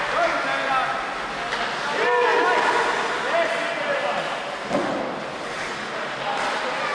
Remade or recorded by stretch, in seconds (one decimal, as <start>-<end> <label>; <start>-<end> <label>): 0.0-6.9 recorded

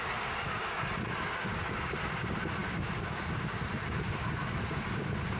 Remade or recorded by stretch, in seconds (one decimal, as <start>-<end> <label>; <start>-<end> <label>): 0.0-2.6 recorded; 2.6-3.7 remade; 3.7-5.4 recorded

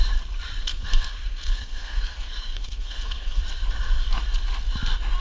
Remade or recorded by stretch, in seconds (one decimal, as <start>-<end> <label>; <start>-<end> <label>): 0.0-0.7 recorded; 0.7-3.4 remade; 3.4-5.2 recorded

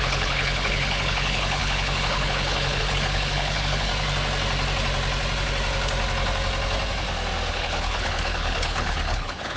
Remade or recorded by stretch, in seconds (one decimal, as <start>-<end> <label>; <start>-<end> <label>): 0.0-3.9 remade; 3.9-7.5 recorded; 7.5-9.6 remade

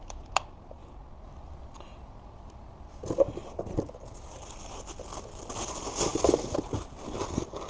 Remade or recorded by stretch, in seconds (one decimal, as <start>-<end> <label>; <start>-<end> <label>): 0.0-7.7 recorded

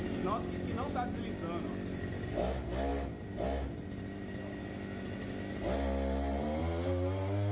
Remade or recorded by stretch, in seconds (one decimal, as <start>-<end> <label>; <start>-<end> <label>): 0.0-7.5 recorded